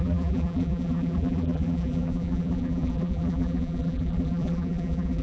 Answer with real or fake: fake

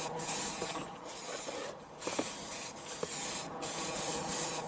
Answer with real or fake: real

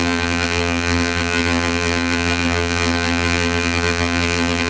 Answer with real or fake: fake